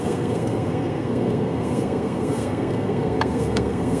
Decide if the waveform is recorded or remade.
remade